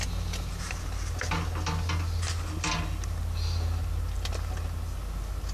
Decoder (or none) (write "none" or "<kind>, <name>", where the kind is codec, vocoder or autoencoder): none